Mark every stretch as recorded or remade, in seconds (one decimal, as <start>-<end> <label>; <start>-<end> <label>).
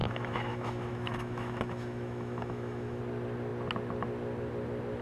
0.0-3.0 remade; 3.0-5.0 recorded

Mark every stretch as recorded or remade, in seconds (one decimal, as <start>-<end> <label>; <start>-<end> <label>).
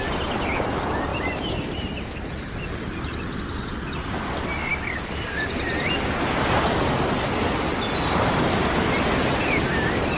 0.0-1.1 recorded; 1.1-3.4 remade; 3.4-10.2 recorded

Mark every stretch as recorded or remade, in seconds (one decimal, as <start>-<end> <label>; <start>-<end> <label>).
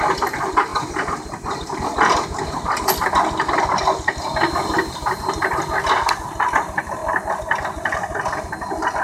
0.0-9.0 recorded